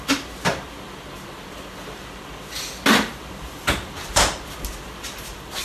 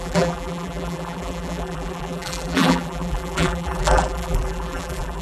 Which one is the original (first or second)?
first